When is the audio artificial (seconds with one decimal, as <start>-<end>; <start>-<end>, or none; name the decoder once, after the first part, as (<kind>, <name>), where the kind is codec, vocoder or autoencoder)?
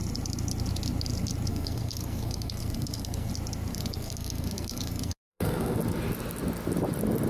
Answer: 1.5-3.3 (codec, SNAC); 3.7-5.8